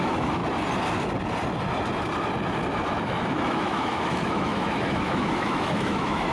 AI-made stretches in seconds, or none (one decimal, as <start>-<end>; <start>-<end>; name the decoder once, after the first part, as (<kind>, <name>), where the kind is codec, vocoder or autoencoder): 0.0-0.4 (autoencoder, DAC-VAE); 3.0-6.3